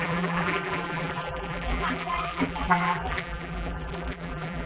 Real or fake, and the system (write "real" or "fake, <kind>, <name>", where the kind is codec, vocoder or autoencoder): fake, vocoder, BigVGAN v2